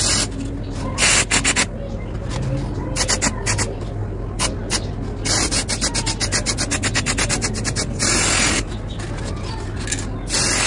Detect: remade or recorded recorded